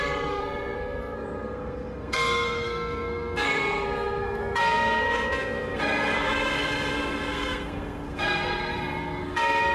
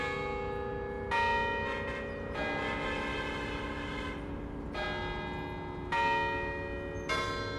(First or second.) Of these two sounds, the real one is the second